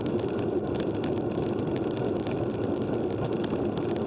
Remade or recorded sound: recorded